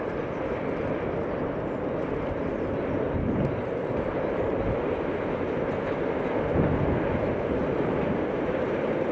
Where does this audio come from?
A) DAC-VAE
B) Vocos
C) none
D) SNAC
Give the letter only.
C